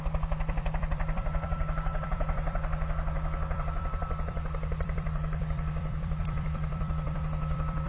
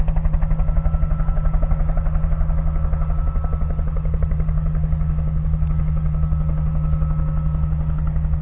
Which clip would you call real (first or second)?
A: second